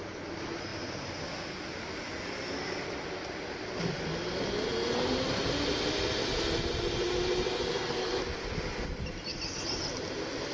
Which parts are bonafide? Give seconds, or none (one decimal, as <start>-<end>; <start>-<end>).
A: 0.0-10.5

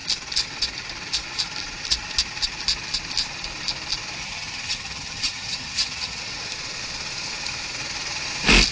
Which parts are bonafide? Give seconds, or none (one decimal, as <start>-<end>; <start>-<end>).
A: 0.0-4.2; 6.2-8.7

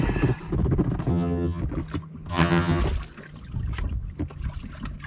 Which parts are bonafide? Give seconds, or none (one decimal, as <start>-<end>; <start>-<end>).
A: 0.0-1.1; 1.6-2.3; 2.8-5.1

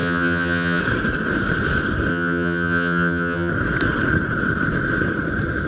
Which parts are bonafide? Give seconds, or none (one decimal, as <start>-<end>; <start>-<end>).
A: 0.8-2.1; 3.5-5.7

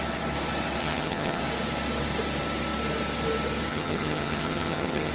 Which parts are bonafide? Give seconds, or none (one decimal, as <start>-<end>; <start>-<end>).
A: 0.0-0.8; 1.4-3.7

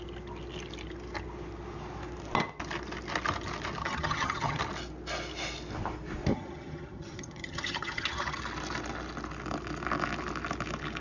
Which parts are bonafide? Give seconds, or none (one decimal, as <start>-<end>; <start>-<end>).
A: 0.0-3.8; 4.6-6.3; 8.4-11.0

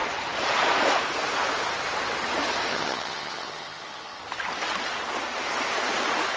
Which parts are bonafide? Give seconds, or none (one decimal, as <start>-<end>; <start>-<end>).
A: 0.0-2.7; 4.2-6.4